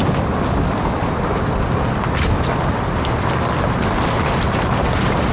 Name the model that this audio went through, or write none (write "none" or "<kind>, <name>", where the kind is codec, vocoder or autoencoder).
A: none